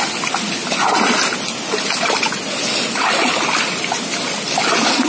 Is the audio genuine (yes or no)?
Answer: yes